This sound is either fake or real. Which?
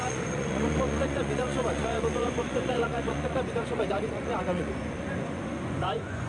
fake